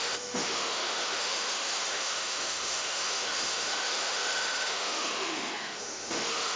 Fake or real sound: fake